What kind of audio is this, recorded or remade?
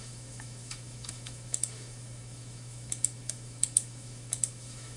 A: remade